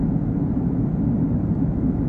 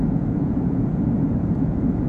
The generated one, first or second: second